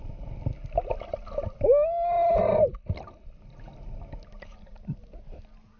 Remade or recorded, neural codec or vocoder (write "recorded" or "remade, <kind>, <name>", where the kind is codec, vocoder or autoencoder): recorded